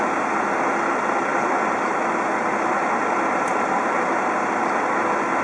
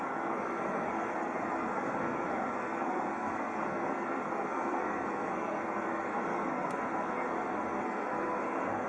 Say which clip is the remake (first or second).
second